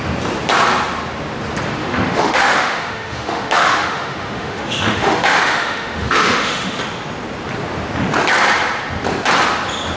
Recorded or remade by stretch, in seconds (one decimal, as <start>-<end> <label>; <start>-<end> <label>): 0.0-1.8 recorded; 1.8-6.8 remade; 6.8-10.0 recorded

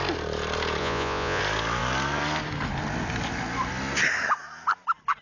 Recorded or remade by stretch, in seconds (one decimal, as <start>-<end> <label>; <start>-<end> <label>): 0.0-0.8 recorded; 0.8-1.4 remade; 1.4-5.2 recorded

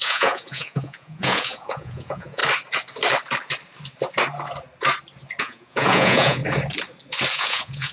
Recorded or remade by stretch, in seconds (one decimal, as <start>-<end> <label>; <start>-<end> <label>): 0.0-2.4 remade; 2.4-5.4 recorded; 5.4-6.4 remade; 6.4-7.3 recorded; 7.3-7.9 remade

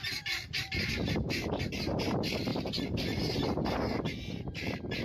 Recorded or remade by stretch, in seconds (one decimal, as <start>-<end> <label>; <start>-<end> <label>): 0.0-5.0 remade

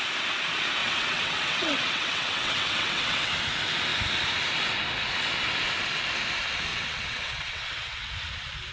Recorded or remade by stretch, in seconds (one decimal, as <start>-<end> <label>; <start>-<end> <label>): 0.0-0.8 recorded; 0.8-3.3 remade; 3.3-6.7 recorded; 6.7-8.1 remade; 8.1-8.7 recorded

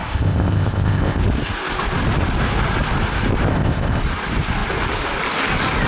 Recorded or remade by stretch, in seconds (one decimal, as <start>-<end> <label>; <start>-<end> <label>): 0.0-1.2 remade; 1.2-3.5 recorded; 3.5-4.0 remade; 4.0-5.9 recorded

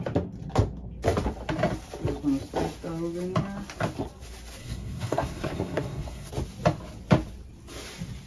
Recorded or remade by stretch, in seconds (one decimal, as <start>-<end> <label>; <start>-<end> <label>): 0.0-4.6 recorded; 4.6-6.3 remade; 6.3-8.3 recorded

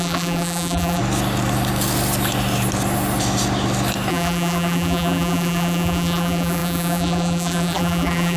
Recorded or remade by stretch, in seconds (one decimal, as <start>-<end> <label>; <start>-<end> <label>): 0.0-1.0 remade; 1.0-4.1 recorded; 4.1-8.4 remade